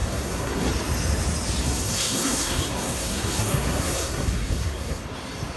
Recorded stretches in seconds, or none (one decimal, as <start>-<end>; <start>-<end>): 0.7-1.6; 5.0-5.6